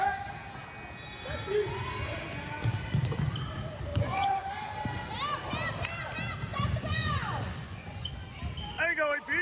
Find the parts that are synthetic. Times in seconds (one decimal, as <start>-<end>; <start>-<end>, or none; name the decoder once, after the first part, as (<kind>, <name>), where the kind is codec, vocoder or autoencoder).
3.9-4.5 (vocoder, Vocos); 6.5-8.1